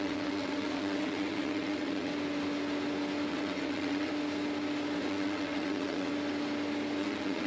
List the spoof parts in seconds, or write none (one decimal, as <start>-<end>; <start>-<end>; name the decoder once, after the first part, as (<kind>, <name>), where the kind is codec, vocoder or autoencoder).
0.0-2.1 (vocoder, WaveNeXt); 3.3-4.1; 5.0-6.1; 7.0-7.5